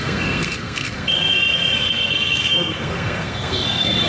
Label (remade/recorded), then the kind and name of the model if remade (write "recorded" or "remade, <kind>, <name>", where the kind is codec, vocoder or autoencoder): remade, codec, SNAC